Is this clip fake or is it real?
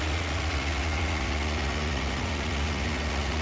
fake